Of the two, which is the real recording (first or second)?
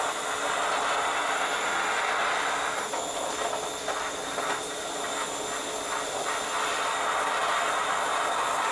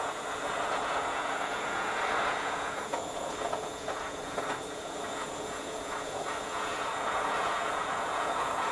first